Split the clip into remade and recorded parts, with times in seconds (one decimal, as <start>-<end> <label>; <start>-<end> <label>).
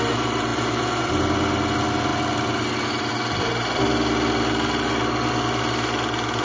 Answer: 0.0-6.4 recorded